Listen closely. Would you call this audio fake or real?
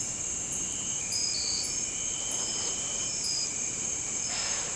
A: fake